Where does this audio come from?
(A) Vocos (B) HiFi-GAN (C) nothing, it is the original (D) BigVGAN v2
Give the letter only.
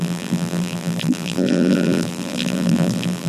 D